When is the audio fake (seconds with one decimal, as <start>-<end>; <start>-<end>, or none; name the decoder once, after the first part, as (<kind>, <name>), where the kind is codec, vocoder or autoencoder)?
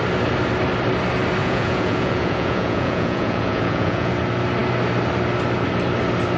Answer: 1.4-4.1 (vocoder, Vocos)